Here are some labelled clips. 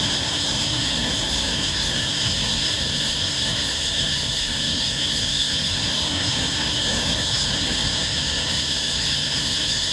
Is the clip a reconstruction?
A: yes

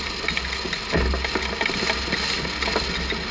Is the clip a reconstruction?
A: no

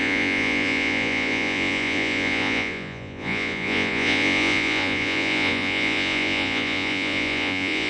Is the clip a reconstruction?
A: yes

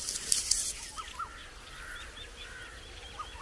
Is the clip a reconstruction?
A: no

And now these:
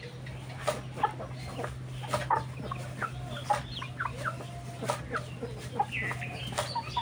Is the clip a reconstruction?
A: no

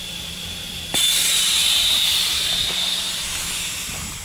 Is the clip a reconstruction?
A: yes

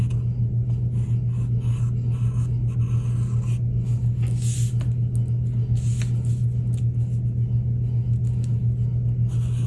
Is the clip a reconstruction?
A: no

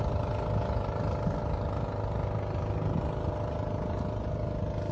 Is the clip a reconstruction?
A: no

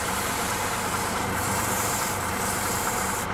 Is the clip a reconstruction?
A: yes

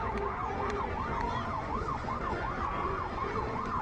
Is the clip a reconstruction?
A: yes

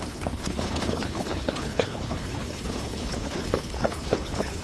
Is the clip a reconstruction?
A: yes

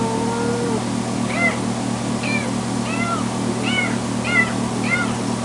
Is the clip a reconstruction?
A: no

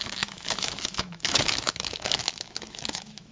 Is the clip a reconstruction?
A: yes